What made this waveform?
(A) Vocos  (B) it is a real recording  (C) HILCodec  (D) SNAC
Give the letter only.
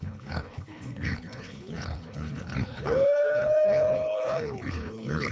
C